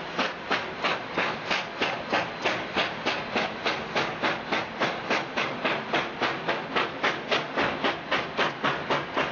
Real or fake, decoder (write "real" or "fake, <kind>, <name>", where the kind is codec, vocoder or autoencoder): real